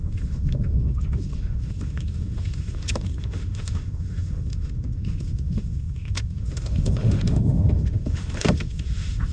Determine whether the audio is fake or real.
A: fake